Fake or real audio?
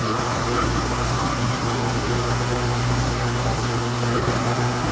fake